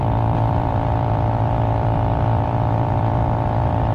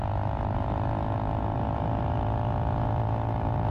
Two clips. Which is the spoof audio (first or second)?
first